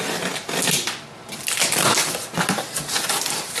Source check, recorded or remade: recorded